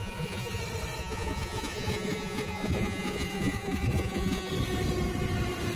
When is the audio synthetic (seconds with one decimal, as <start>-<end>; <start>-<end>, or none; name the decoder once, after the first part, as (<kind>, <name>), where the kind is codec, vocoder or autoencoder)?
0.0-0.6 (vocoder, Vocos); 1.0-4.5